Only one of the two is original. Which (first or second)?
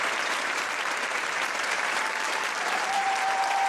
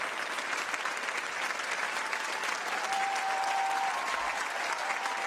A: second